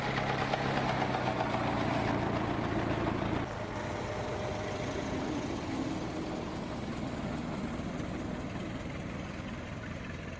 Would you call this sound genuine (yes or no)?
yes